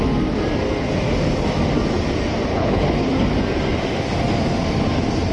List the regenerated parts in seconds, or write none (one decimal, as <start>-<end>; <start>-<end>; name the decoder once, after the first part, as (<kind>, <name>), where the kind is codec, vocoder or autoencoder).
2.5-3.1 (codec, HILCodec)